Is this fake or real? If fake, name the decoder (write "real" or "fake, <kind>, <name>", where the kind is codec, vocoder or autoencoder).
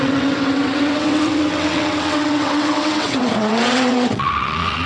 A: fake, vocoder, WaveNeXt